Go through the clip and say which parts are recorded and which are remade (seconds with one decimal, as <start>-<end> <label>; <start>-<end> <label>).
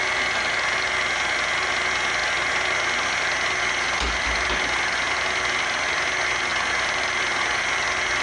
0.0-8.2 recorded